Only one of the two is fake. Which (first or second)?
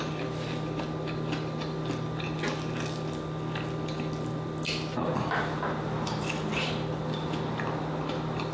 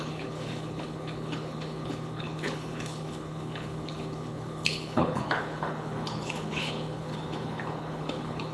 second